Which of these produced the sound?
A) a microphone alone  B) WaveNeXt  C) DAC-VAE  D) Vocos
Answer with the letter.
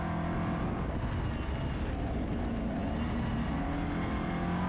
A